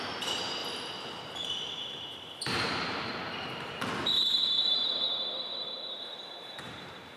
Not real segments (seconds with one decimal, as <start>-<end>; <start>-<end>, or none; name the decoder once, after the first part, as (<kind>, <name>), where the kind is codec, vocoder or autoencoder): 0.0-0.6 (vocoder, BigVGAN v2); 1.4-7.2